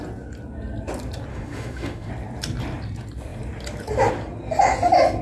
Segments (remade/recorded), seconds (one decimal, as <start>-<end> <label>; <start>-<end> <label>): 0.0-1.3 recorded; 1.3-2.1 remade; 2.1-5.2 recorded